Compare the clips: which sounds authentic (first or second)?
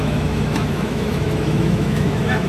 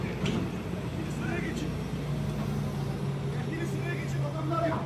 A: second